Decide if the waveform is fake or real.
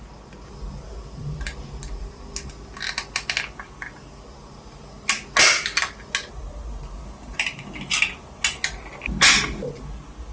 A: real